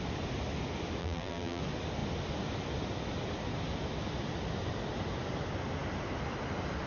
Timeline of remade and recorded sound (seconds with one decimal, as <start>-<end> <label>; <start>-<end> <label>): 0.0-1.0 recorded; 1.0-1.6 remade; 1.6-6.9 recorded